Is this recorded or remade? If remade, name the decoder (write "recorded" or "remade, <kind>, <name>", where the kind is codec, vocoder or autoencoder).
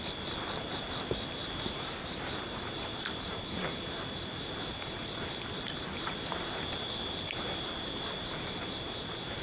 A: remade, vocoder, BigVGAN v2